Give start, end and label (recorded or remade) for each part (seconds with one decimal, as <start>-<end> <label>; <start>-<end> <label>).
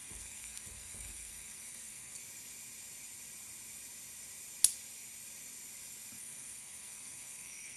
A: 0.0-2.2 remade; 2.2-6.2 recorded; 6.2-7.8 remade